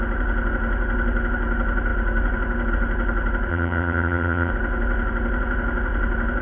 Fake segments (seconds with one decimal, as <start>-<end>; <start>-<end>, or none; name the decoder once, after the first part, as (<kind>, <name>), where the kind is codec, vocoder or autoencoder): 3.5-4.5 (vocoder, HiFi-GAN)